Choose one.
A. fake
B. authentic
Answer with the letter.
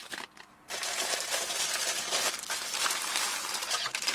A